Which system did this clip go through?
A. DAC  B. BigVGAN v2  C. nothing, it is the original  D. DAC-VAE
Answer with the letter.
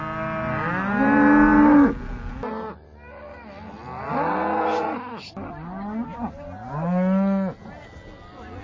C